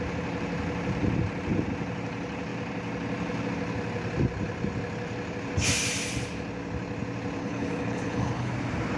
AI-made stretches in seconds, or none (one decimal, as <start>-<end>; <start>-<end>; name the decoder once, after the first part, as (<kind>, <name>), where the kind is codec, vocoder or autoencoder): 7.4-8.5 (codec, HILCodec)

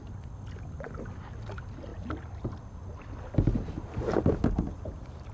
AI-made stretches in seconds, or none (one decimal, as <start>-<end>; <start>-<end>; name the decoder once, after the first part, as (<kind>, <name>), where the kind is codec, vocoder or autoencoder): none

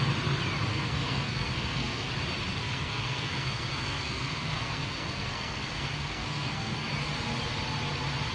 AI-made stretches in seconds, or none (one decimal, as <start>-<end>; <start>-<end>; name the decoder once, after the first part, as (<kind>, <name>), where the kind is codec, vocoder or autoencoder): 0.7-2.1 (codec, SNAC); 2.5-6.9

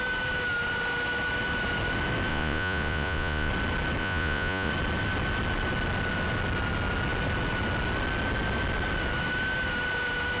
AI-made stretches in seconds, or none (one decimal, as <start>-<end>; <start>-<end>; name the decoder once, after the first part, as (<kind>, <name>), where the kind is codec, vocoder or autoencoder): 2.3-3.5 (vocoder, Vocos); 4.0-4.7

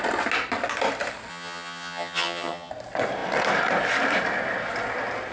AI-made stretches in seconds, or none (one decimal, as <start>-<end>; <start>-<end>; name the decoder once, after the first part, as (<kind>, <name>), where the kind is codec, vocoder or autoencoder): 1.3-2.7 (vocoder, HiFi-GAN)

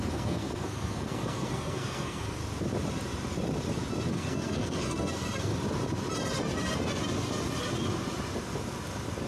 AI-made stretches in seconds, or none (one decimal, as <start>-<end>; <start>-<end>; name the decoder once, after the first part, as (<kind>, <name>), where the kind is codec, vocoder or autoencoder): 0.0-2.4 (codec, SNAC); 4.1-5.5

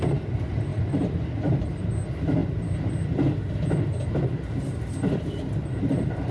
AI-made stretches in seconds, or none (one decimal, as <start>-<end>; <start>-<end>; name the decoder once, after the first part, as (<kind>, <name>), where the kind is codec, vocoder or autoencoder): 0.7-1.9 (vocoder, BigVGAN v2)

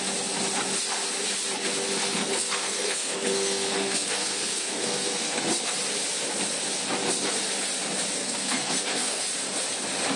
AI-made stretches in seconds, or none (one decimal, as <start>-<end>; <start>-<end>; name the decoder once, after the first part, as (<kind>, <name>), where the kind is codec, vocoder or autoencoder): 2.1-5.4 (codec, SNAC); 8.2-9.2